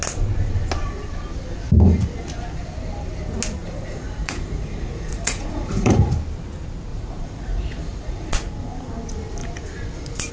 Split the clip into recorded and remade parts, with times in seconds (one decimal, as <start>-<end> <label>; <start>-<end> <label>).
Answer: 0.0-3.6 recorded; 3.6-6.1 remade; 6.1-6.9 recorded; 6.9-8.3 remade; 8.3-10.3 recorded